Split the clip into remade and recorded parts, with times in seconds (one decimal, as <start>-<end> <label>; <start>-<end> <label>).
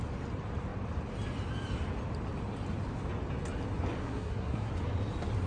0.0-4.0 recorded; 4.0-4.7 remade; 4.7-5.5 recorded